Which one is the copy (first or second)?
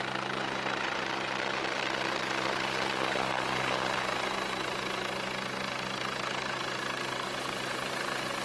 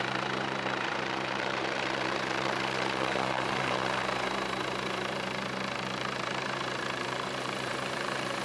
second